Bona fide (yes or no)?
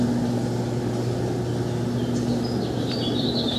yes